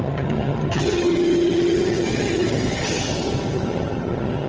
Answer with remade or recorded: remade